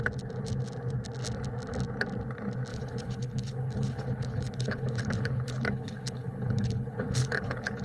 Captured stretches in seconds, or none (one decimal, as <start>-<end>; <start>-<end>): 0.0-2.7